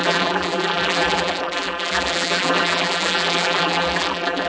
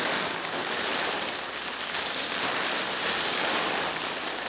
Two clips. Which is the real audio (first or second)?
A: second